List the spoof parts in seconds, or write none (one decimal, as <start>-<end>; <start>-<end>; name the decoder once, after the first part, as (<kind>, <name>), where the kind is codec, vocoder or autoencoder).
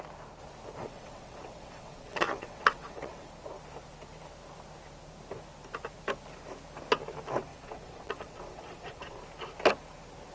0.8-3.3 (vocoder, WaveNeXt); 7.5-9.2